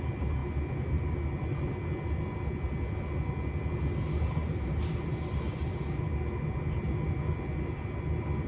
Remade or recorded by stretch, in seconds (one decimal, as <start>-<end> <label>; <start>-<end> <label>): 0.0-4.4 recorded; 4.4-6.0 remade; 6.0-8.5 recorded